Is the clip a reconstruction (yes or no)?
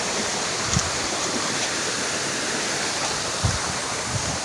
yes